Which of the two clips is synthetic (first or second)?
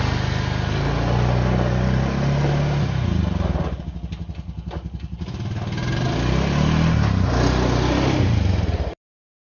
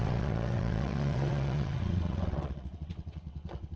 second